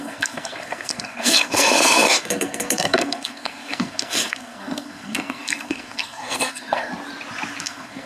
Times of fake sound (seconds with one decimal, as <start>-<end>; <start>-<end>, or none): 0.0-6.9; 7.6-8.1